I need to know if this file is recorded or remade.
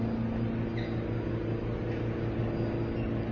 recorded